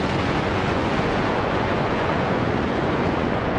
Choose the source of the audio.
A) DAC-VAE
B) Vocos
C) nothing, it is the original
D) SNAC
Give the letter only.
B